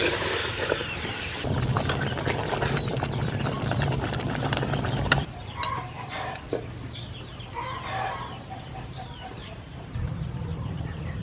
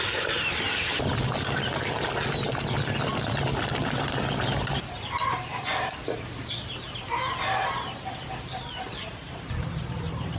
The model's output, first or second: first